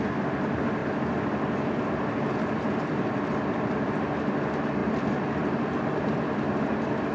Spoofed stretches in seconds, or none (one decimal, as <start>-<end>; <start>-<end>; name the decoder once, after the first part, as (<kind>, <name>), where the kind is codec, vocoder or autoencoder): 0.8-3.9 (vocoder, BigVGAN v2); 4.8-6.3